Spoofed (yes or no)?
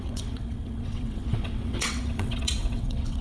yes